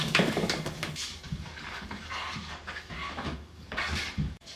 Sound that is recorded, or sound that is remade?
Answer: remade